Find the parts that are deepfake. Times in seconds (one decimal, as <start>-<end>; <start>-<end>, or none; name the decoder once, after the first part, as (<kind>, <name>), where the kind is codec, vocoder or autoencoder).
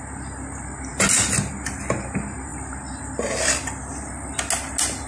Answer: none